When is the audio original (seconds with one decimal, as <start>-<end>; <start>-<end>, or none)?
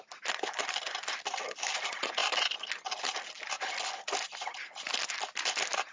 0.0-5.9